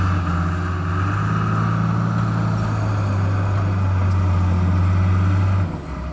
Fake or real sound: real